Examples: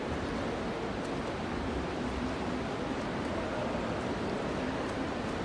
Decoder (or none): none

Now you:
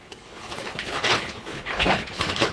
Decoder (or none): codec, HILCodec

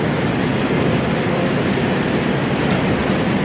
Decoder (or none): vocoder, BigVGAN v2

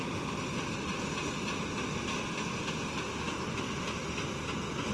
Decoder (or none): none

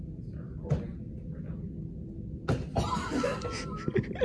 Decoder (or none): none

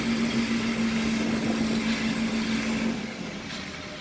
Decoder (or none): none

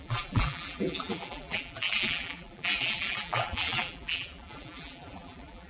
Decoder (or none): vocoder, BigVGAN v2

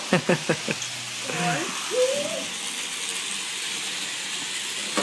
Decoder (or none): none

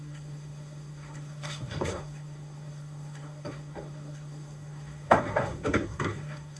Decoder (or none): codec, SNAC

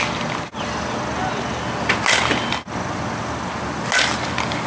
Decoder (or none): none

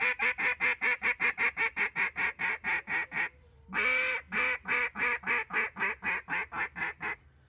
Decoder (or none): none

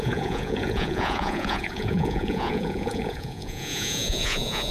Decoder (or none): vocoder, Vocos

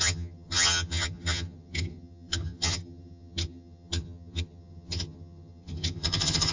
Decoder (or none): vocoder, HiFi-GAN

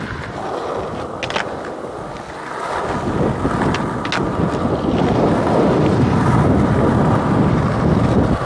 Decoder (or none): none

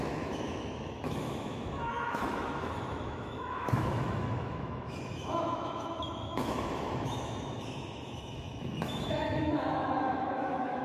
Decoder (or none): autoencoder, DAC-VAE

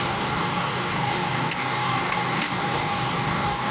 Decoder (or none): codec, DAC